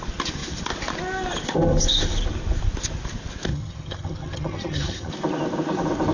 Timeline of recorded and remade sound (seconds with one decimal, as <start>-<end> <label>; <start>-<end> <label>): 0.0-3.5 recorded; 3.5-5.1 remade; 5.1-6.1 recorded